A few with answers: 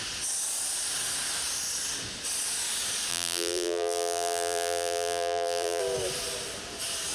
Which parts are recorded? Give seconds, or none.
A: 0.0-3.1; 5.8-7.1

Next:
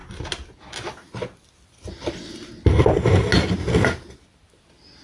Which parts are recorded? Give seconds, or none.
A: 0.0-5.0

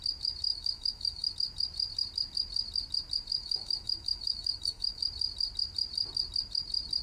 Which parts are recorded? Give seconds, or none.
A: 0.0-0.5; 1.3-3.4; 5.0-7.0

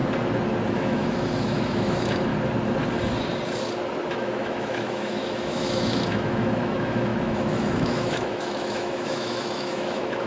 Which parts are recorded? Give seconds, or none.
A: 0.0-0.7; 2.3-4.1

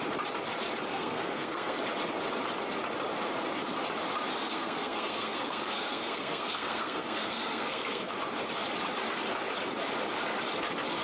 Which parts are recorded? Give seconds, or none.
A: 0.0-0.9; 1.8-4.3; 8.1-11.0

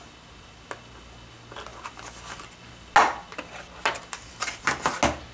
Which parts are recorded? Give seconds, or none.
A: 0.0-5.3

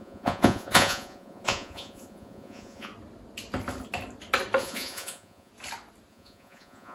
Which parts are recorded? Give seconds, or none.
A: 2.9-4.6; 5.5-6.1

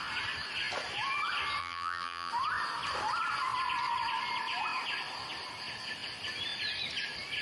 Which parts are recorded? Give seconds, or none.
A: 0.0-1.6; 2.3-7.4